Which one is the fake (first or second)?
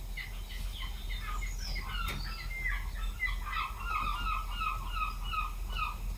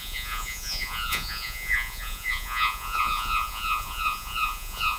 second